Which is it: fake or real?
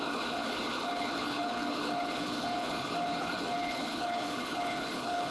fake